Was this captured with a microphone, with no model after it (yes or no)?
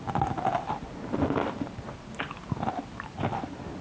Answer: yes